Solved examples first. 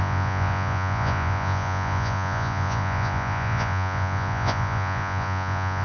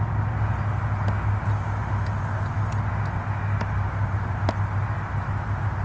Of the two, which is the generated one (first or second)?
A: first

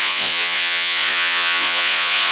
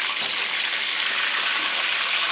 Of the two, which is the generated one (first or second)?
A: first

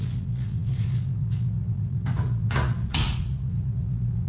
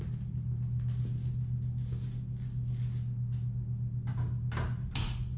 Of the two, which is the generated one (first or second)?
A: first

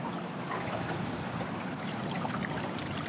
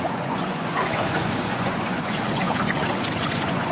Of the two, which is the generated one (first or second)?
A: second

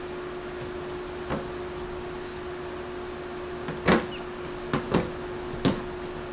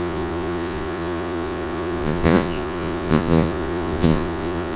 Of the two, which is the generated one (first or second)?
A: second